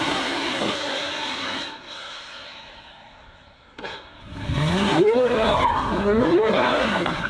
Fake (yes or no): yes